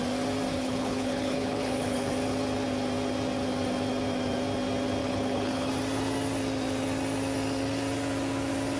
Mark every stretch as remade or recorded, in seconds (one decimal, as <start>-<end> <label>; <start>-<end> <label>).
0.0-0.5 recorded; 0.5-2.1 remade; 2.1-5.0 recorded; 5.0-5.7 remade; 5.7-8.8 recorded